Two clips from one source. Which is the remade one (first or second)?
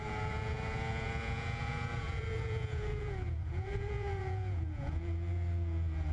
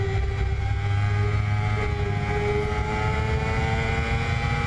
first